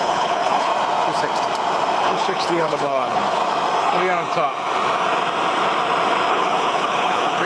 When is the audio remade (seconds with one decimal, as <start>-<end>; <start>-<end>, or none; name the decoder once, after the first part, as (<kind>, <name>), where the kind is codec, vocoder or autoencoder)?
0.0-0.7 (codec, HILCodec); 2.0-3.4; 6.3-7.5